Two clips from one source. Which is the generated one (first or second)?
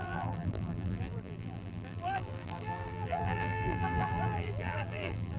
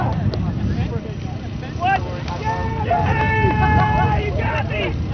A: first